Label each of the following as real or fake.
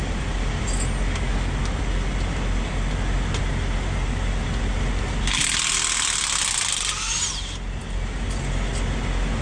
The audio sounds real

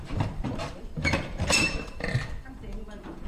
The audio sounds fake